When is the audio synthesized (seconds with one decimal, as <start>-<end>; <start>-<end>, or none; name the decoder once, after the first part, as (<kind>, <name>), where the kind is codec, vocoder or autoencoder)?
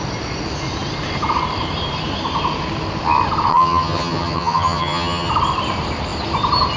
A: 3.5-5.3 (vocoder, HiFi-GAN)